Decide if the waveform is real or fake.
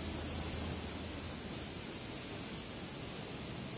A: real